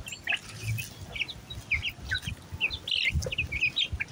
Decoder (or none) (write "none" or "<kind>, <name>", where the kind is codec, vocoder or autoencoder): none